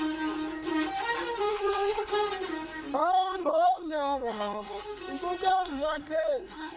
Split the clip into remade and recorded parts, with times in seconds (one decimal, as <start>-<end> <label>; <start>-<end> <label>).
0.0-1.5 recorded; 1.5-2.1 remade; 2.1-3.0 recorded; 3.0-4.8 remade; 4.8-5.5 recorded; 5.5-6.8 remade